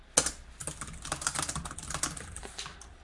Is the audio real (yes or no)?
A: yes